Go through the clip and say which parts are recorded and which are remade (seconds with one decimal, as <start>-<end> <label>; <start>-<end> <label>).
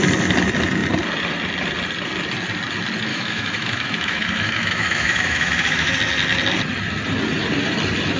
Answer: 0.0-3.1 recorded; 3.1-5.9 remade; 5.9-8.2 recorded